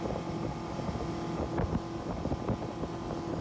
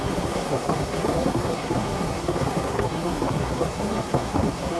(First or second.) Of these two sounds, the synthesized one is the second